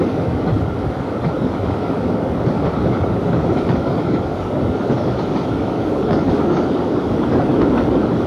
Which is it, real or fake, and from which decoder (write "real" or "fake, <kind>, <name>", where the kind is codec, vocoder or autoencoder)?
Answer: fake, codec, DAC